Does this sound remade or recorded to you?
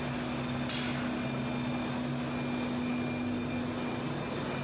recorded